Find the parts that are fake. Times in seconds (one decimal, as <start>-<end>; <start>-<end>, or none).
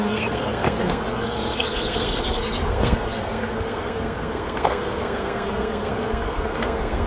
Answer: 0.0-7.1